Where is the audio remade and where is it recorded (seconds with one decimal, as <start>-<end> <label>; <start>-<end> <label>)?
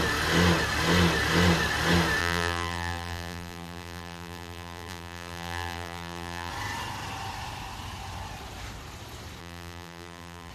0.0-2.2 recorded; 2.2-6.5 remade; 6.5-9.4 recorded; 9.4-10.5 remade